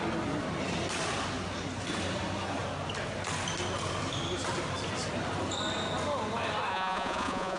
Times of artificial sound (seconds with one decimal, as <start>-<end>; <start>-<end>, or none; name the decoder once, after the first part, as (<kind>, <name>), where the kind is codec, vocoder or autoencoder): 6.7-7.6 (vocoder, Vocos)